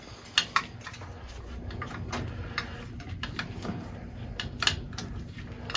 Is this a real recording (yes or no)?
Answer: yes